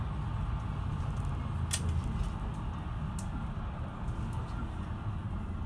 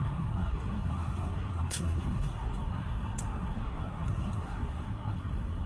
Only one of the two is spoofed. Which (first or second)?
second